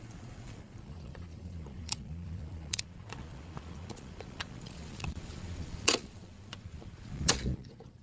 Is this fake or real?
fake